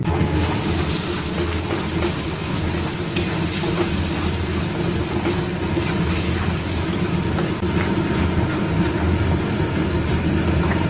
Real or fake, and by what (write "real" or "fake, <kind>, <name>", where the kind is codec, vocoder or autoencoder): real